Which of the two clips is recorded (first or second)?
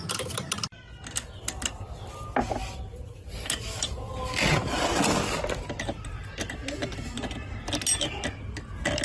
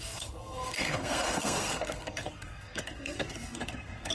first